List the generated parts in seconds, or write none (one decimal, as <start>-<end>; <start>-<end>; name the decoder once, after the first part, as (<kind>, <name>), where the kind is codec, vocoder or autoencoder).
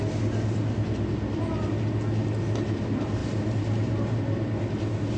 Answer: 3.2-4.2 (vocoder, BigVGAN v2)